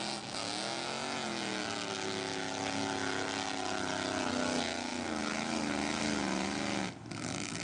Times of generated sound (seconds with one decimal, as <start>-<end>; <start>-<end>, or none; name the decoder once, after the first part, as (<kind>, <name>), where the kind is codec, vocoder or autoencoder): none